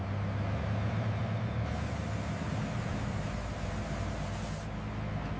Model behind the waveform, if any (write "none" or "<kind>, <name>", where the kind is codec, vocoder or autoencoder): none